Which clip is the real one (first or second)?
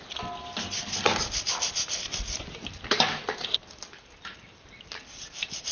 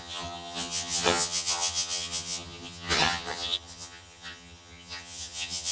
first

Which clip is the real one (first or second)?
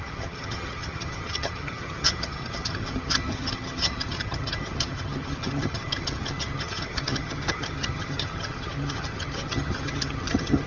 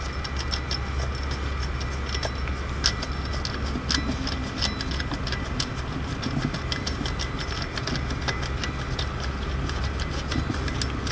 second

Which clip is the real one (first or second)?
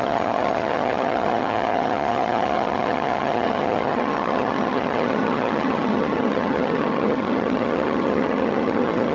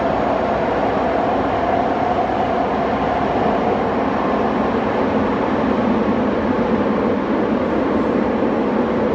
second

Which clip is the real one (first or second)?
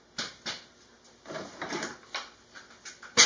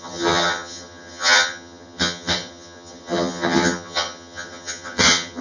first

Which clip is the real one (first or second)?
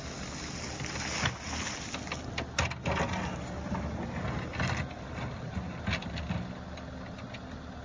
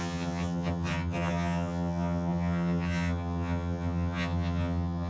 first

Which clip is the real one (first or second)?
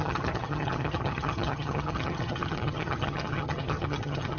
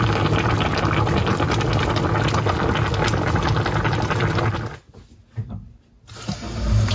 second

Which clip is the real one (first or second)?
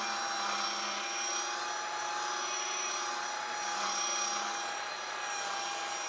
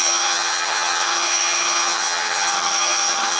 first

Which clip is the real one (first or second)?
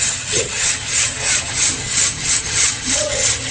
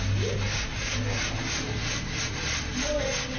second